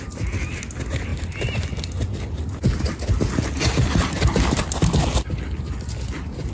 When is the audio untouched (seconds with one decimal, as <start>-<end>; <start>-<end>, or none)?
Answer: 0.0-1.1; 2.5-6.5